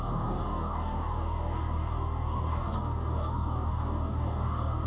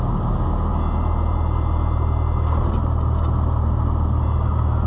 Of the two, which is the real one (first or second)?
second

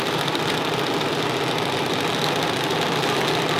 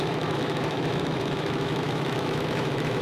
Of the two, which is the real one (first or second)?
first